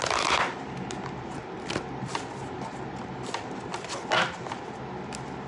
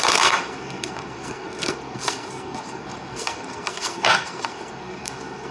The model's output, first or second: second